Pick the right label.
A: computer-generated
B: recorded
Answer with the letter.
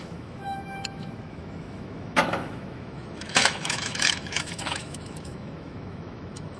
A